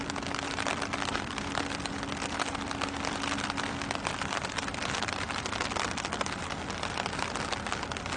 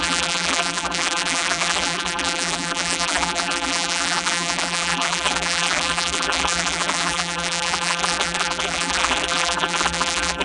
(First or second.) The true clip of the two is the first